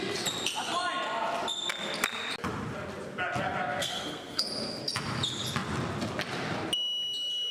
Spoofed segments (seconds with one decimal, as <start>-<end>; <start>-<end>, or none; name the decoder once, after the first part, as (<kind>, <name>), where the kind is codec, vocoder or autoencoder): 3.8-4.5 (codec, SNAC)